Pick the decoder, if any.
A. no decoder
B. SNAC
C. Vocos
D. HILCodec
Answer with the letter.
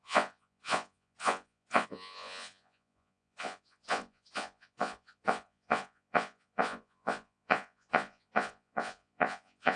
C